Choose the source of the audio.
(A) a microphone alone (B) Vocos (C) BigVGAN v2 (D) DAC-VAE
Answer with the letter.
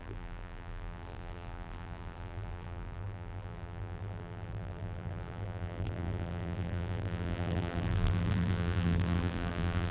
C